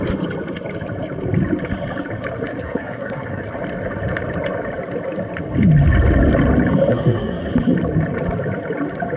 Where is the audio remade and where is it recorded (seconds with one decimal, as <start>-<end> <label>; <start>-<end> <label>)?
0.0-2.5 recorded; 2.5-3.4 remade; 3.4-6.9 recorded; 6.9-7.5 remade; 7.5-9.2 recorded